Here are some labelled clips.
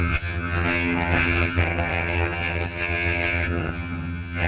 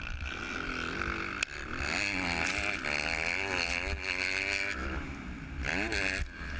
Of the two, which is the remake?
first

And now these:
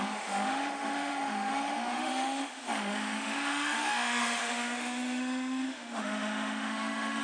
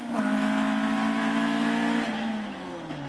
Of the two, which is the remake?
first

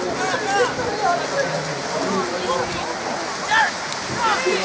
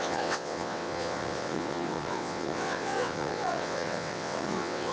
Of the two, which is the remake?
second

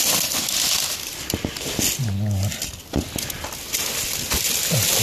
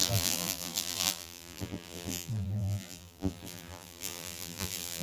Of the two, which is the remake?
second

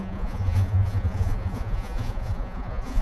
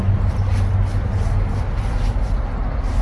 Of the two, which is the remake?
first